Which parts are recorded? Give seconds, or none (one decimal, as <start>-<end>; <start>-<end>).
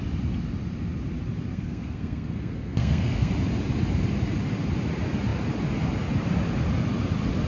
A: 0.0-1.5; 3.3-7.5